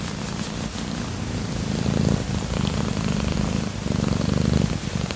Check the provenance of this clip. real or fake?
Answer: real